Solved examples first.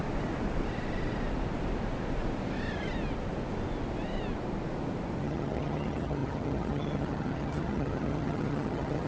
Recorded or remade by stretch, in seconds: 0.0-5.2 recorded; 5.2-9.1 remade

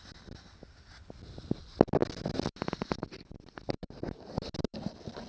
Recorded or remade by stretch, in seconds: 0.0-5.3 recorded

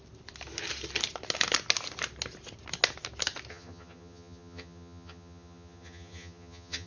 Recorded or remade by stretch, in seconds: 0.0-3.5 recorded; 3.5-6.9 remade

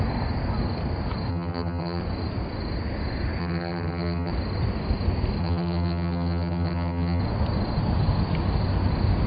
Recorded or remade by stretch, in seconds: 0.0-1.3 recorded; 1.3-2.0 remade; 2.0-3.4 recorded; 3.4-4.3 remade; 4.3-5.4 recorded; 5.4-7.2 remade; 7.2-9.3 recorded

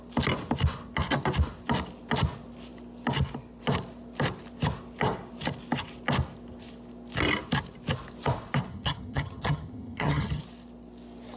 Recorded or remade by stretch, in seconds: 0.0-8.7 recorded; 8.7-10.4 remade; 10.4-11.4 recorded

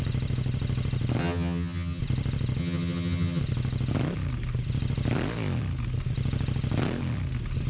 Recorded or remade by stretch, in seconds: 0.0-1.2 recorded; 1.2-2.0 remade; 2.0-2.6 recorded; 2.6-3.4 remade; 3.4-7.7 recorded

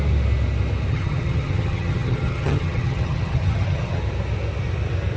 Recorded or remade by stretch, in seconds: 0.0-0.9 recorded; 0.9-4.0 remade; 4.0-5.2 recorded

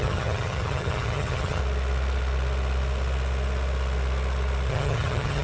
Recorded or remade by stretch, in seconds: 0.0-1.6 remade; 1.6-4.7 recorded; 4.7-5.4 remade